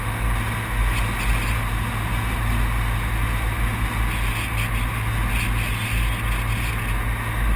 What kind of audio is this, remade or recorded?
recorded